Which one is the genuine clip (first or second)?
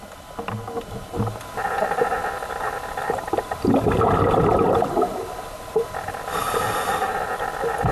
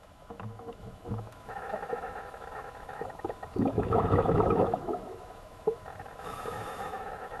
first